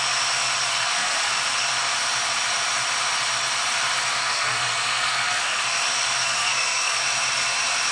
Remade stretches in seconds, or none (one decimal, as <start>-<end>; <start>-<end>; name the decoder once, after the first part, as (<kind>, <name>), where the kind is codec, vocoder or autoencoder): 0.7-1.3 (codec, SNAC); 4.2-5.6; 6.2-7.0